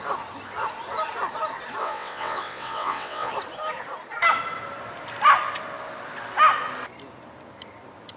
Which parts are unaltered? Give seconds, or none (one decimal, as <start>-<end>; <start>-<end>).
0.0-1.8; 3.3-8.2